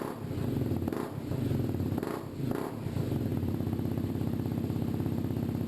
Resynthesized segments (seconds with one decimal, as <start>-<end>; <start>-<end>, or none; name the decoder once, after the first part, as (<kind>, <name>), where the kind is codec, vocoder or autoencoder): none